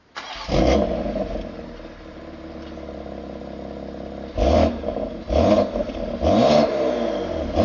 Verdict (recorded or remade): recorded